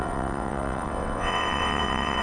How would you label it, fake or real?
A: fake